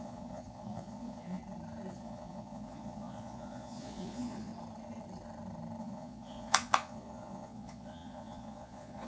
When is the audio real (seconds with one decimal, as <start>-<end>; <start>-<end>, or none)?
1.4-1.9; 4.5-5.8